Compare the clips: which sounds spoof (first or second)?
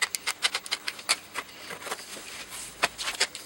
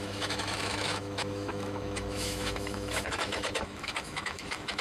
second